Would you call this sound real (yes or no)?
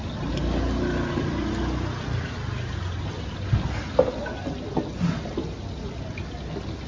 yes